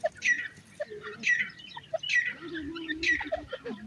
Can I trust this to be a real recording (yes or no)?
yes